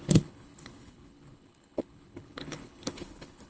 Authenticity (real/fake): fake